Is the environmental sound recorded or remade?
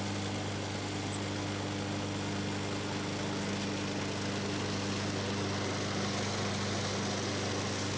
recorded